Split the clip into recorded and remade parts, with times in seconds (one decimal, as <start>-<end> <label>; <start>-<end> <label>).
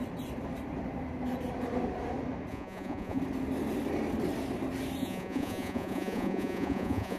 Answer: 0.0-2.5 recorded; 2.5-3.2 remade; 3.2-5.0 recorded; 5.0-7.2 remade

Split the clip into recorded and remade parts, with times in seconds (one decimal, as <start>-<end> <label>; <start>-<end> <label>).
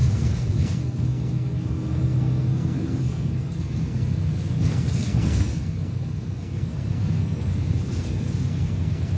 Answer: 0.0-9.2 remade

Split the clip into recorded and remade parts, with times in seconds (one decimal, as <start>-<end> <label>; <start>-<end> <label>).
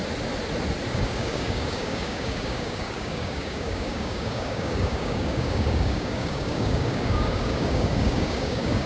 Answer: 0.0-0.9 recorded; 0.9-8.9 remade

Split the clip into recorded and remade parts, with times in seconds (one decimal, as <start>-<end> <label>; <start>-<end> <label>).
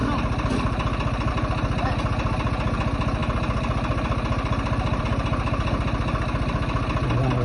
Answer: 0.0-7.4 recorded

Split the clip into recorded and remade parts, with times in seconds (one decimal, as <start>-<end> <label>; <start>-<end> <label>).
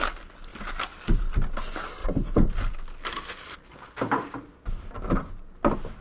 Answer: 0.0-6.0 recorded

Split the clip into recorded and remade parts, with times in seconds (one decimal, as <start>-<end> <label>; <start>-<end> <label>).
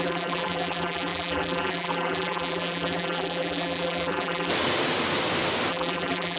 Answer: 0.0-4.5 remade; 4.5-5.7 recorded; 5.7-6.4 remade